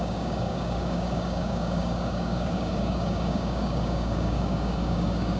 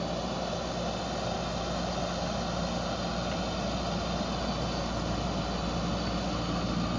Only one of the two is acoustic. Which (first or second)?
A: second